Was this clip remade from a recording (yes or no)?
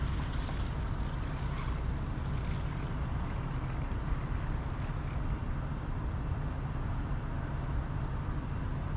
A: no